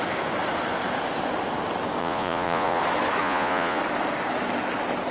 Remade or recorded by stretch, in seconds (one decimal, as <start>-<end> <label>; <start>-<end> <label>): 0.0-2.0 recorded; 2.0-2.8 remade; 2.8-3.2 recorded; 3.2-3.8 remade; 3.8-5.1 recorded